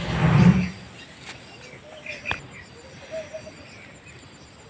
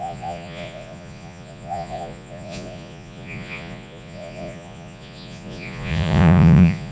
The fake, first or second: second